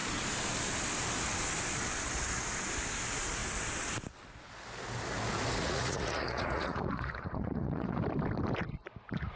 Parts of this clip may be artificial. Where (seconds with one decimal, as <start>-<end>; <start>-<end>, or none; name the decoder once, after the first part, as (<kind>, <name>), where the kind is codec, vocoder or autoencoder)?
5.6-8.0 (vocoder, Vocos)